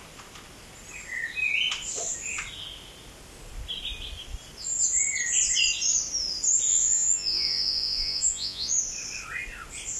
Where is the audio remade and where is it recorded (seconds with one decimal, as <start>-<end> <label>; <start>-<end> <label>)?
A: 0.0-6.7 recorded; 6.7-8.8 remade; 8.8-10.0 recorded